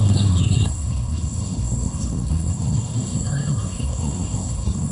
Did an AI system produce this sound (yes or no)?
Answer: yes